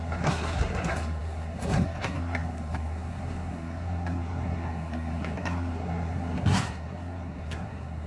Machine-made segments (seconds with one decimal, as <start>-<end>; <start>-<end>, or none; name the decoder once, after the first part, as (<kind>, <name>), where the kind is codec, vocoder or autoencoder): 0.0-8.1 (codec, SNAC)